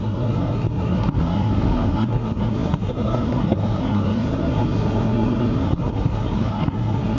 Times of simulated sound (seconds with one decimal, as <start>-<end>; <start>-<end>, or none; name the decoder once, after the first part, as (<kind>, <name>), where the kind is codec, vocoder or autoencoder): 0.0-7.2 (codec, SNAC)